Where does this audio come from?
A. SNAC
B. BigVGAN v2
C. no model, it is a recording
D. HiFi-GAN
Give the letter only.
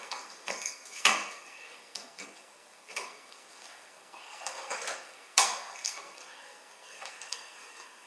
A